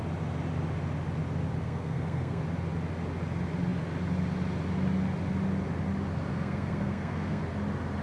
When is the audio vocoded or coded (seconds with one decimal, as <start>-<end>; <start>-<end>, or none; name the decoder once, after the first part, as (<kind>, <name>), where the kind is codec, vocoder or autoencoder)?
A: 1.6-2.4 (codec, SNAC); 6.3-7.4